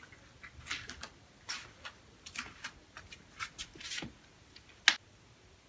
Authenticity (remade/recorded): recorded